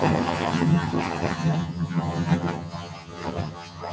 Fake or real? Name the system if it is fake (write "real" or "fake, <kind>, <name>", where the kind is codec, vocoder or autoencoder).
fake, vocoder, HiFi-GAN